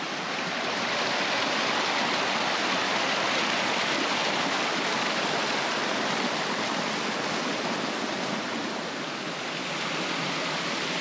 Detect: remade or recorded recorded